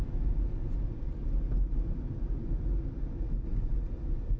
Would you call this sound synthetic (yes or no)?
no